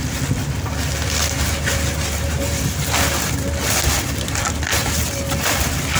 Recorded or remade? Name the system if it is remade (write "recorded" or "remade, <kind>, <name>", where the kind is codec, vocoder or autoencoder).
recorded